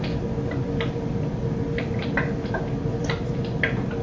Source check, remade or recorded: recorded